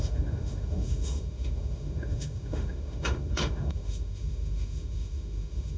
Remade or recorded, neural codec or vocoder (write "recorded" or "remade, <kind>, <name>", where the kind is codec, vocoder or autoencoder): remade, autoencoder, DAC-VAE